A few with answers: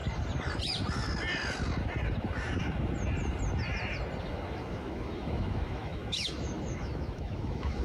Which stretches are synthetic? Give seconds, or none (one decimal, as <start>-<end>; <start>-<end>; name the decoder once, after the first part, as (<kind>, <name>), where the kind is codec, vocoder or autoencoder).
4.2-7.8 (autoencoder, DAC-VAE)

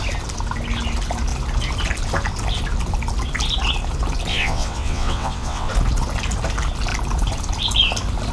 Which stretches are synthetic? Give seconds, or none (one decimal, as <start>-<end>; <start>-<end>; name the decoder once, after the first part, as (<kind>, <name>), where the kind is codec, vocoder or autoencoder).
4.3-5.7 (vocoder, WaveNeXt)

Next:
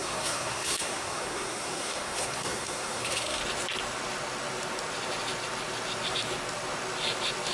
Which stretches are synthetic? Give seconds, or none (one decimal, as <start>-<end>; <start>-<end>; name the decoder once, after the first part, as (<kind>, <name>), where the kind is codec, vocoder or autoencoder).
0.0-3.4 (codec, SNAC)